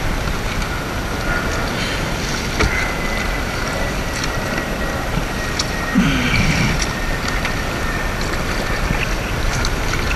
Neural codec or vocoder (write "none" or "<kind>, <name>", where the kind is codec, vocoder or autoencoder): none